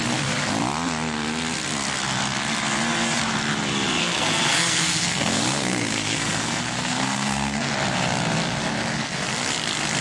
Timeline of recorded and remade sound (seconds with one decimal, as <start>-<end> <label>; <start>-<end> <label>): 0.0-4.0 recorded; 4.0-7.7 remade; 7.7-10.0 recorded